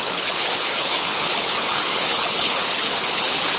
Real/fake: fake